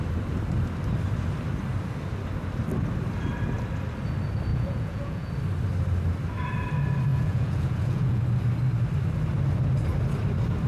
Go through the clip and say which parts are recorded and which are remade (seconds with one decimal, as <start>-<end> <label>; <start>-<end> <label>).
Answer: 0.0-4.5 recorded; 4.5-5.3 remade; 5.3-7.1 recorded; 7.1-8.2 remade; 8.2-10.7 recorded